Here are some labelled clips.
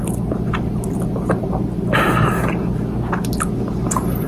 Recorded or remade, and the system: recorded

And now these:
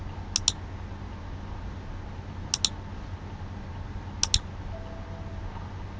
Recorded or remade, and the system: recorded